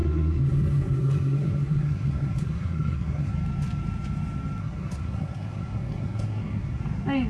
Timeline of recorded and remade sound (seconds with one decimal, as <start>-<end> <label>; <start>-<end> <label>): 0.0-3.3 remade; 3.3-4.6 recorded; 4.6-6.8 remade; 6.8-7.3 recorded

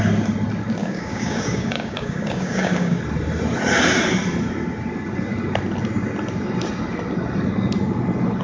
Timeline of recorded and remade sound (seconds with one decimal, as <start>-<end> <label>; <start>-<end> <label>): 0.0-0.8 recorded; 0.8-3.0 remade; 3.0-8.4 recorded